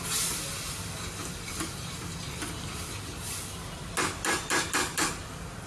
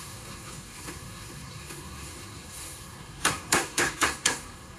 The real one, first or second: first